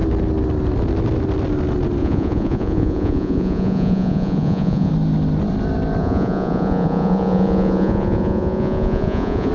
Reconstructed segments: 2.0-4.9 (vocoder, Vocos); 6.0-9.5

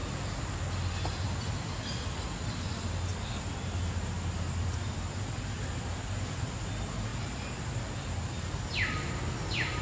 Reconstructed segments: 0.0-0.6 (vocoder, BigVGAN v2); 7.1-7.9

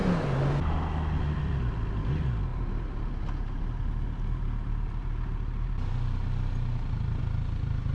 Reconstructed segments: none